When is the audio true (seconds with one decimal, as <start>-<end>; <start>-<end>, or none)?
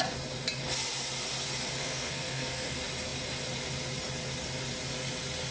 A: 0.0-1.8; 2.7-5.5